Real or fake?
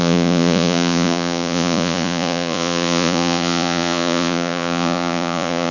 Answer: fake